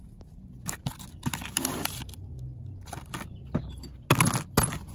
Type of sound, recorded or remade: recorded